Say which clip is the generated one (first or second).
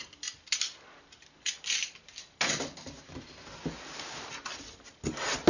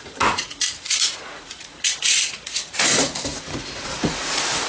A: second